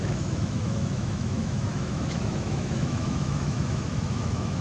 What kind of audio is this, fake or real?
fake